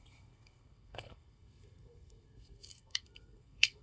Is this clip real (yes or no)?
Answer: no